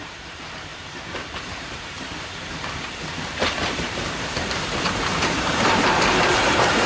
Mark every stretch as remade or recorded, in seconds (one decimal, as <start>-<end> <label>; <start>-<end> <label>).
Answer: 0.0-6.9 remade